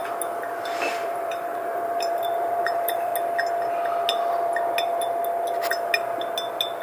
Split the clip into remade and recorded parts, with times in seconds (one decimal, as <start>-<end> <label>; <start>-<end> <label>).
0.0-0.9 recorded; 0.9-3.1 remade; 3.1-6.8 recorded